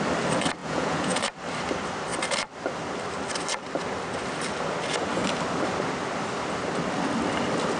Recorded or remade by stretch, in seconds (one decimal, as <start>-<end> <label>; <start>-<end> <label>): 0.0-0.6 recorded; 0.6-1.2 remade; 1.2-7.8 recorded